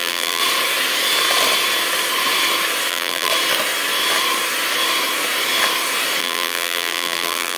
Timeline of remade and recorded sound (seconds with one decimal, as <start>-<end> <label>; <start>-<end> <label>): 0.0-0.4 remade; 0.4-2.9 recorded; 2.9-3.3 remade; 3.3-6.2 recorded; 6.2-7.6 remade